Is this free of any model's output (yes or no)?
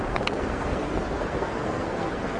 no